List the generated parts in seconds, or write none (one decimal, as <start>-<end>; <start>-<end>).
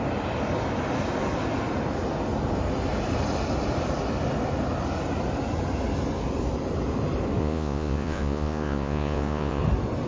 7.4-9.6